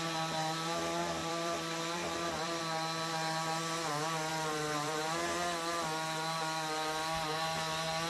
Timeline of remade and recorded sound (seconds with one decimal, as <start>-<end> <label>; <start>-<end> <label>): 0.0-1.2 recorded; 1.2-2.6 remade; 2.6-4.3 recorded; 4.3-5.0 remade; 5.0-8.1 recorded